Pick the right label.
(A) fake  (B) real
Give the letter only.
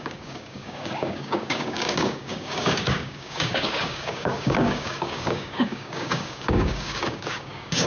A